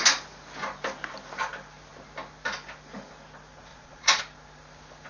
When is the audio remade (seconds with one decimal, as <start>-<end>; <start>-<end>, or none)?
3.7-4.2